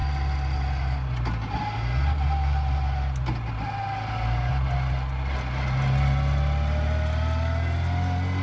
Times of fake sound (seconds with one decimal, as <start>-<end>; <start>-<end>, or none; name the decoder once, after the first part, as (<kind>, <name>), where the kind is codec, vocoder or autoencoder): none